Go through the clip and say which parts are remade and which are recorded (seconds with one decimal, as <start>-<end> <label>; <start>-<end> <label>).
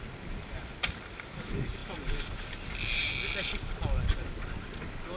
0.0-5.2 recorded